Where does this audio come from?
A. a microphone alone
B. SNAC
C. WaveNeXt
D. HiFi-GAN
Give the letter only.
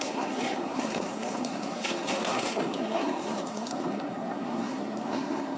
B